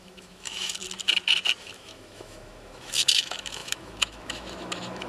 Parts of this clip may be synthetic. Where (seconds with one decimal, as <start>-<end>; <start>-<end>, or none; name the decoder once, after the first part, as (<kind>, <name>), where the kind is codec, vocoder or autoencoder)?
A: 0.0-0.8 (autoencoder, DAC-VAE); 1.6-5.1